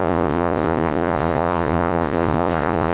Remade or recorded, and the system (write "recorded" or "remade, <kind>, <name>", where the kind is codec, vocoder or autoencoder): remade, vocoder, Vocos